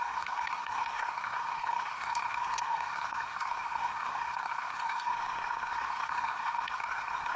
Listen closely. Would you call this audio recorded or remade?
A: remade